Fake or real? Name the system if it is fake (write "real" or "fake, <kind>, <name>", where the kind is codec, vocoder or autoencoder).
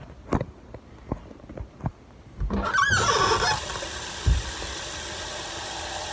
real